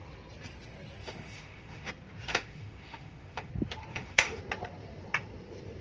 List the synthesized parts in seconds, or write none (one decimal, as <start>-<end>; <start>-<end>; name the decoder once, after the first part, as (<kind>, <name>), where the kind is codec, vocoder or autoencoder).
1.0-1.9 (autoencoder, DAC-VAE); 2.3-3.5; 3.9-4.4